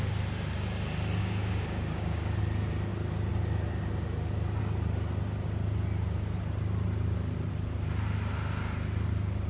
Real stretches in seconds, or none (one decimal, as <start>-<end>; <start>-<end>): 0.0-1.2; 2.4-9.5